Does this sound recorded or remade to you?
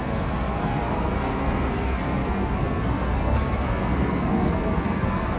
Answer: remade